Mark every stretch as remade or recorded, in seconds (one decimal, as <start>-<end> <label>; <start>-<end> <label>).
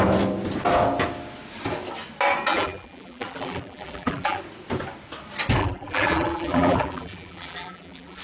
0.0-2.5 recorded; 2.5-4.4 remade; 4.4-5.6 recorded; 5.6-8.2 remade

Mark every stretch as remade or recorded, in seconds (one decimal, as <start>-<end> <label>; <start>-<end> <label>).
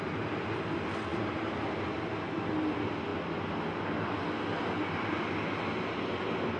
0.0-6.6 recorded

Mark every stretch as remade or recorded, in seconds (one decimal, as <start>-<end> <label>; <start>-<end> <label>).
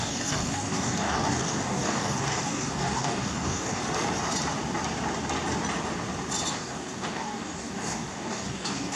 0.0-3.8 remade; 3.8-6.5 recorded; 6.5-9.0 remade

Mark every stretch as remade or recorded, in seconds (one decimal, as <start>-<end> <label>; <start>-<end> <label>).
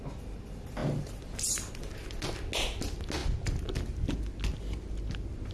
0.0-5.5 recorded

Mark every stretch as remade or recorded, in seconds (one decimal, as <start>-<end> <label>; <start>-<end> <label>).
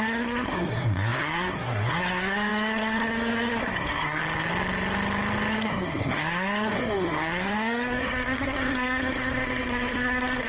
0.0-4.2 remade; 4.2-5.5 recorded; 5.5-10.5 remade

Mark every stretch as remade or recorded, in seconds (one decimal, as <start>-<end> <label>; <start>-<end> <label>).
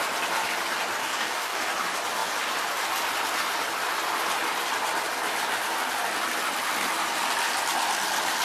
0.0-1.0 recorded; 1.0-1.6 remade; 1.6-8.4 recorded